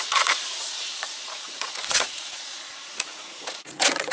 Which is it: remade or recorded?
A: remade